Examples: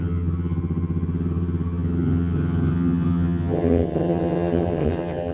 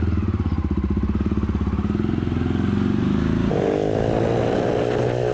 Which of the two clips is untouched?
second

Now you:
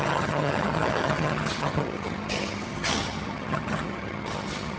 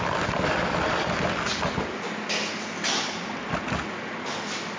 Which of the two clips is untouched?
second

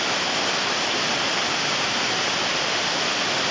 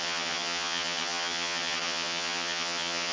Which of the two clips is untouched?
first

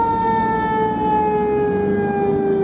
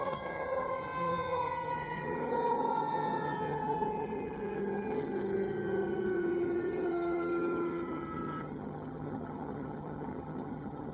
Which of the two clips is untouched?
first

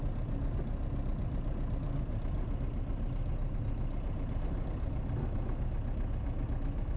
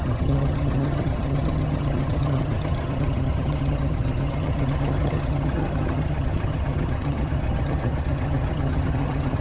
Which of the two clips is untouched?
first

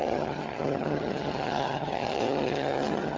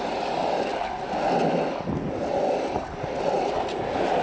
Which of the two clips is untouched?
second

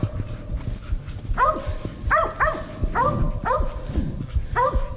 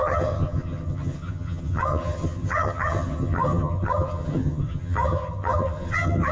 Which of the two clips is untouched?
first